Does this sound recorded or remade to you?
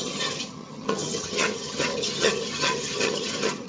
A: remade